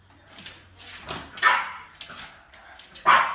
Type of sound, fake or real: real